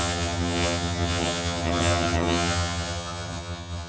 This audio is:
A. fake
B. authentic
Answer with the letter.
A